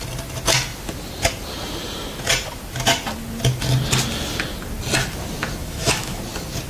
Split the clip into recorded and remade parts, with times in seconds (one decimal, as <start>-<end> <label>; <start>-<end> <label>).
0.0-5.6 recorded; 5.6-6.2 remade; 6.2-6.7 recorded